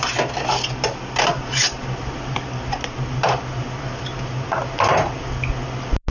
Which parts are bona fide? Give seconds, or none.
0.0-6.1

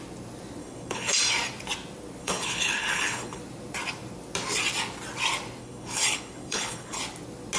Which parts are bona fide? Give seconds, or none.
0.0-0.6; 1.2-2.2; 3.4-5.6; 7.0-7.6

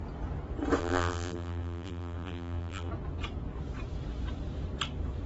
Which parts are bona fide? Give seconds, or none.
0.0-0.8; 2.9-5.3

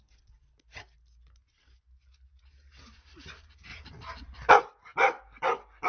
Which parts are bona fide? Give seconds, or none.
0.0-3.7; 4.5-4.9

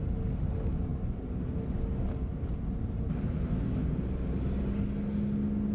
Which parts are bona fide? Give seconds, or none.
0.0-5.7

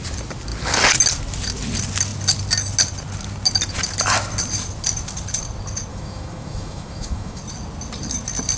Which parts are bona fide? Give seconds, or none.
0.0-5.9; 7.4-8.6